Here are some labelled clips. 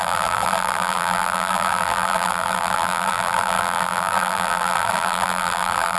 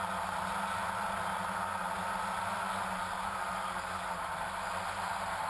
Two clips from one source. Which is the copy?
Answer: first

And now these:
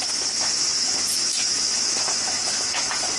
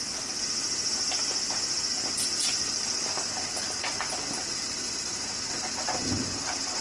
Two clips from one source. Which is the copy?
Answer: first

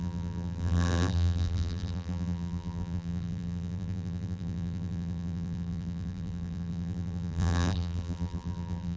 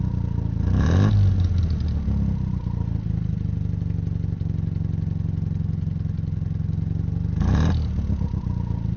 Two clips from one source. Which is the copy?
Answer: first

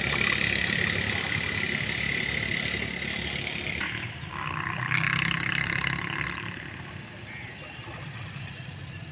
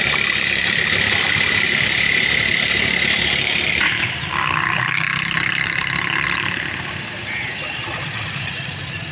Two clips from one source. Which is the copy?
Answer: second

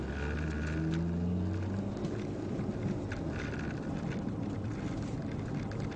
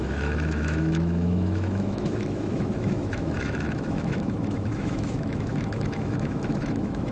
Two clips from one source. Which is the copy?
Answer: second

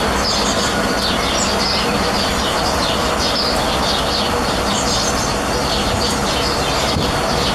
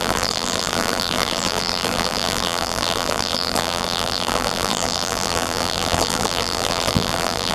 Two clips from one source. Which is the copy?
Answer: second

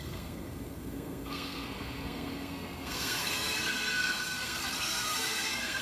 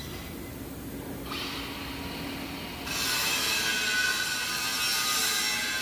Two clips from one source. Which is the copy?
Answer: first